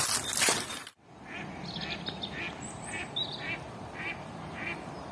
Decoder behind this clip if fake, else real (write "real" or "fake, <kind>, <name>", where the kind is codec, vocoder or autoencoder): real